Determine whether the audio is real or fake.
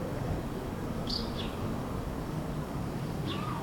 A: fake